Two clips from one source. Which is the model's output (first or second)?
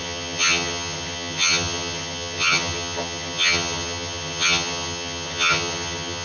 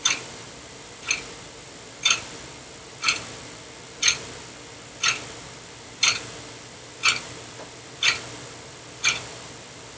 first